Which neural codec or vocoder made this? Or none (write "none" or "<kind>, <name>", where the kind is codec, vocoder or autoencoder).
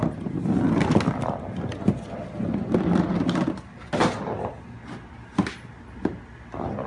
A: none